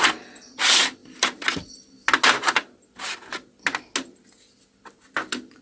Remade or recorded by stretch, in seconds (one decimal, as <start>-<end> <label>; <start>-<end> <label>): 0.0-5.6 recorded